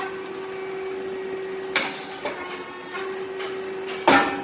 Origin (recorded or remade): recorded